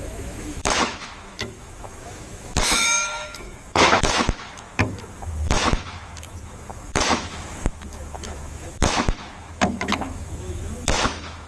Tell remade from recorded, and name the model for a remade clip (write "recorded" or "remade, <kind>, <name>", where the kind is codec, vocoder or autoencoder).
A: remade, autoencoder, DAC-VAE